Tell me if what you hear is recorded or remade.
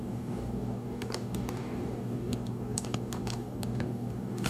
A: remade